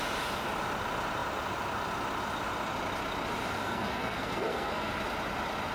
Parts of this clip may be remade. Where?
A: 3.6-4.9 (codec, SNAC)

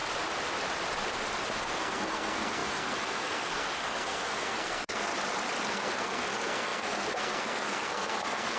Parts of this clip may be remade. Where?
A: 1.6-5.1 (codec, SNAC); 5.7-8.6

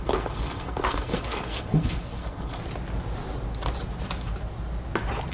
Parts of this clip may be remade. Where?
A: 0.0-2.6 (codec, SNAC)